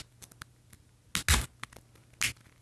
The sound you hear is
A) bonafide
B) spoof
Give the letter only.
A